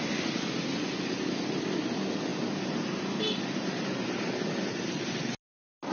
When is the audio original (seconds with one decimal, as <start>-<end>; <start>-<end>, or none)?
0.0-5.9